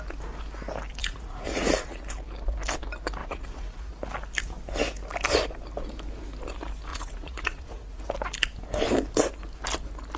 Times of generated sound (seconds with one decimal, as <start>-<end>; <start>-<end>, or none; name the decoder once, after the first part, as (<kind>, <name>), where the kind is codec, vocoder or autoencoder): 1.0-2.0 (vocoder, Vocos); 3.2-3.9; 6.9-8.0